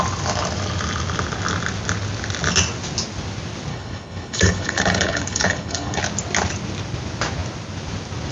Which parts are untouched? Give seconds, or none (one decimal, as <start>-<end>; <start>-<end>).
0.0-3.7; 6.0-8.3